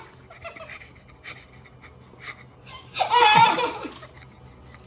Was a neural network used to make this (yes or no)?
no